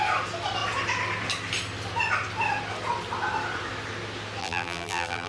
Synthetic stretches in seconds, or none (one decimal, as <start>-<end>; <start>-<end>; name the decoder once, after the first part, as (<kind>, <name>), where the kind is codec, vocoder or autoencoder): 4.4-5.3 (vocoder, BigVGAN v2)